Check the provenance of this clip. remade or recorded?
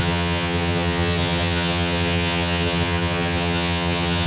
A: remade